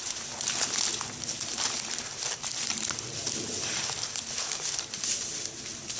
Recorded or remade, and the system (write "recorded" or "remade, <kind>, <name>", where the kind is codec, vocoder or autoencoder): remade, vocoder, BigVGAN v2